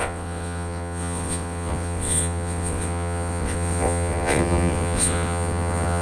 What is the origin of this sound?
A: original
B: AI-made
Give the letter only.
B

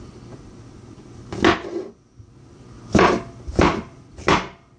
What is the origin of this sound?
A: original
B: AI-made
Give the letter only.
A